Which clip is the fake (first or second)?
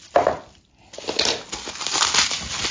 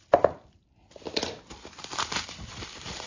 second